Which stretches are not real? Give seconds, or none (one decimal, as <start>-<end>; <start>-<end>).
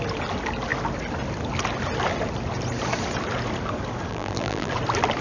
4.1-4.7